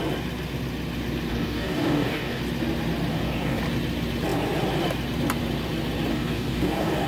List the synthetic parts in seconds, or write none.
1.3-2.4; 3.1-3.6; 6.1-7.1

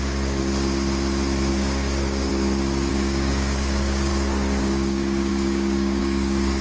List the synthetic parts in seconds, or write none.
0.0-0.4; 1.5-2.3; 2.9-4.1; 4.6-6.6

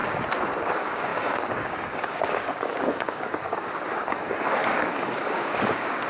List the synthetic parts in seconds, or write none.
0.7-6.1

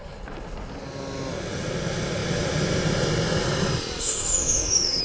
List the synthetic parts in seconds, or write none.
4.0-5.0

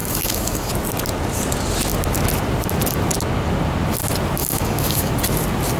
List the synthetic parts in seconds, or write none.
0.0-0.7; 4.4-5.1

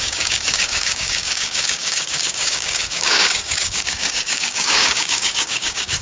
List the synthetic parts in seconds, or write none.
0.0-6.0

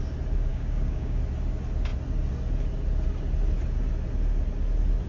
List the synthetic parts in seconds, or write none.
0.5-1.2

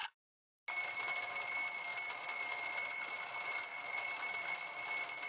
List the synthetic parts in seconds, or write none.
0.0-0.6